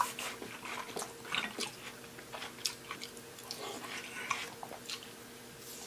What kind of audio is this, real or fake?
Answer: real